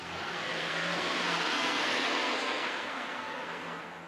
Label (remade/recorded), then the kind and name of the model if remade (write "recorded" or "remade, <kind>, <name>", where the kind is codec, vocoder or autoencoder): remade, codec, SNAC